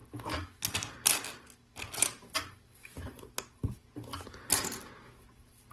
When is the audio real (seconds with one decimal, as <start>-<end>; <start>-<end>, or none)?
0.0-5.7